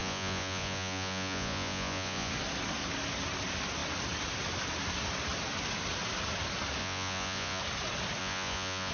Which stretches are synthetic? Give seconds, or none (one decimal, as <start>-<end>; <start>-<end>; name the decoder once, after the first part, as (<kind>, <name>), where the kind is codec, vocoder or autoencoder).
0.0-2.3 (vocoder, Vocos); 6.8-7.6; 8.2-8.9